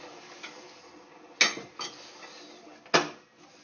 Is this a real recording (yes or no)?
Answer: yes